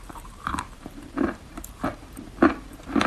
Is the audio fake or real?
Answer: fake